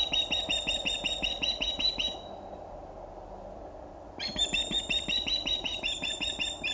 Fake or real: real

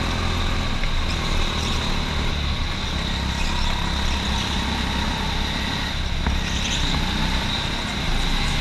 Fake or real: real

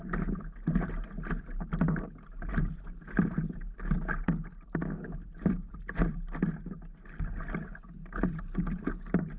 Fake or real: real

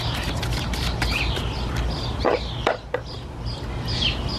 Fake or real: real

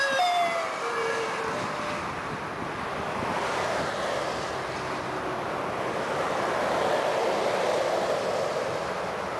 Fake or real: real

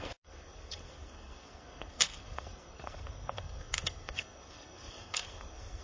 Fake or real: fake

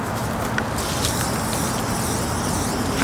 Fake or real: real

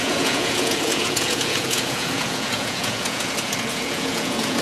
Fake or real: fake